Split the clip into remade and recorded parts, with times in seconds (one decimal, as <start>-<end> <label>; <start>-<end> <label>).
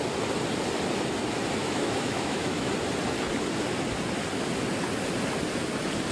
0.0-1.6 recorded; 1.6-2.7 remade; 2.7-6.1 recorded